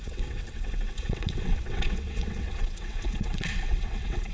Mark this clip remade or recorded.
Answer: remade